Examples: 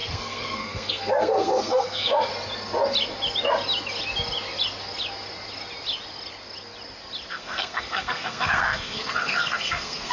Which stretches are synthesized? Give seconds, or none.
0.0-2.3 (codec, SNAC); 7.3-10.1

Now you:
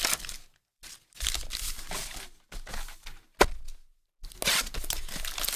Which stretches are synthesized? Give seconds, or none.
none

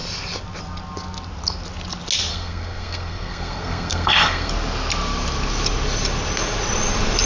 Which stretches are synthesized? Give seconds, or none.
2.3-4.5 (codec, SNAC)